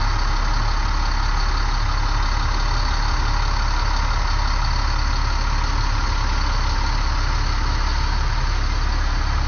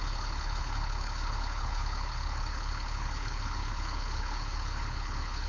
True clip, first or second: first